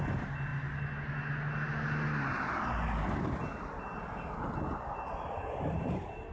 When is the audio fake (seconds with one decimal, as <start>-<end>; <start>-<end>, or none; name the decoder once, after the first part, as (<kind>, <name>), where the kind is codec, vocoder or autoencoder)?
none